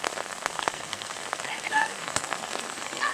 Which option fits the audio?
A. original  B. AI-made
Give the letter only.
B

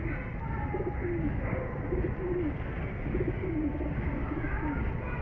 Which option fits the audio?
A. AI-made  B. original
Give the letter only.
B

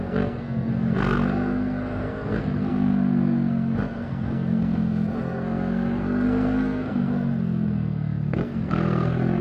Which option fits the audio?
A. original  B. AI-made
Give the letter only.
B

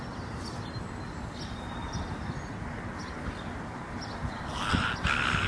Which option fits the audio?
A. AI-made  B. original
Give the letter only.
B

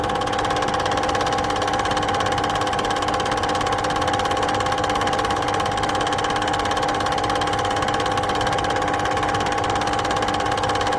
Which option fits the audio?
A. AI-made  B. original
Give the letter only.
B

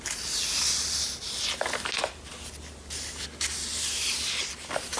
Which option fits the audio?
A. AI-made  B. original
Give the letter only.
B